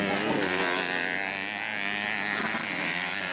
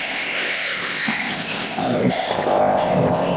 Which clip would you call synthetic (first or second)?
second